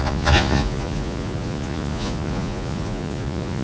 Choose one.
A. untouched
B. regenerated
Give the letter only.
B